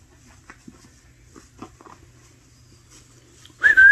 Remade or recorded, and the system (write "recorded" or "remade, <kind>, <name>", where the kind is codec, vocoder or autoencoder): recorded